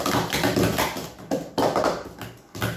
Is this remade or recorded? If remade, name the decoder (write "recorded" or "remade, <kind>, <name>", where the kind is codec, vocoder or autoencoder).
recorded